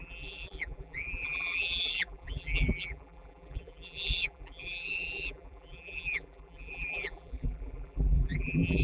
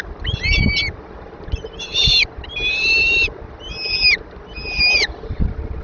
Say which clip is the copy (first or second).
first